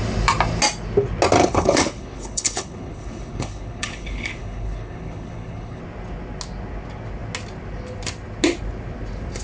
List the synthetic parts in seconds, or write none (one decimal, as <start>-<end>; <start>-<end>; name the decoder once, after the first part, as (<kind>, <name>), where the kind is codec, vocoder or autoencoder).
1.4-5.8 (codec, HILCodec)